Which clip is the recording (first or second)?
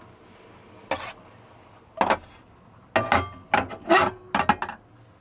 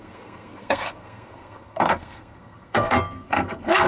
first